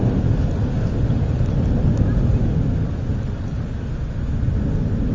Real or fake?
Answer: real